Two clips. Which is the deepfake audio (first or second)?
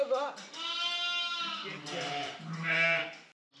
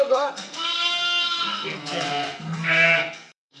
second